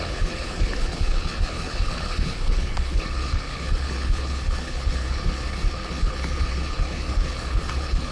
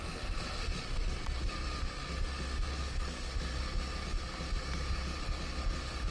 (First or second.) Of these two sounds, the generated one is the first